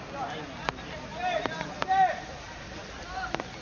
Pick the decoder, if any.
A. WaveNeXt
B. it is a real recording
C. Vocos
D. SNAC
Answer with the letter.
B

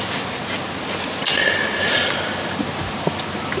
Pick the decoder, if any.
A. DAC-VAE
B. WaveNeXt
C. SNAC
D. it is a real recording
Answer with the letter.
D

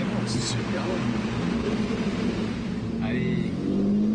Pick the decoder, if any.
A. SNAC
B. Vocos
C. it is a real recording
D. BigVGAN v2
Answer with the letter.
C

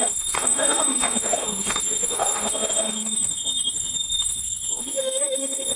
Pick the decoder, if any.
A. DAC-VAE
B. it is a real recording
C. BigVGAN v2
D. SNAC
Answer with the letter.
A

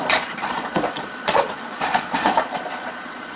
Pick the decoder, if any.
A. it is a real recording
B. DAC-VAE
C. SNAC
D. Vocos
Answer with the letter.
D